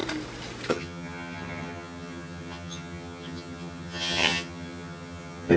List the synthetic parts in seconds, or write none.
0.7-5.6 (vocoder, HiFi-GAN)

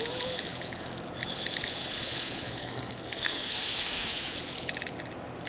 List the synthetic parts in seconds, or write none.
2.6-4.1 (codec, SNAC)